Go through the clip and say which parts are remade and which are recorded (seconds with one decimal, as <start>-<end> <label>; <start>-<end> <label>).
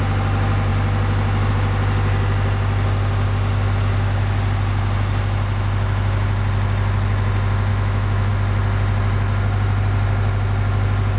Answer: 0.0-7.7 recorded; 7.7-8.3 remade; 8.3-11.2 recorded